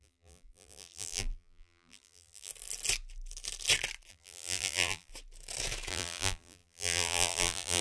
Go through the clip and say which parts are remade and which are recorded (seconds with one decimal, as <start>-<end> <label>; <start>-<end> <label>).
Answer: 0.0-2.5 remade; 2.5-4.1 recorded; 4.1-5.1 remade; 5.1-5.9 recorded; 5.9-7.8 remade